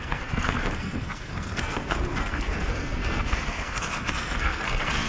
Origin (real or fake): fake